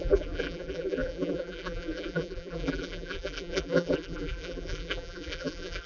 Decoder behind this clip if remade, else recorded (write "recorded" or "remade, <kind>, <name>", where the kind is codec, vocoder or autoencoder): remade, vocoder, BigVGAN v2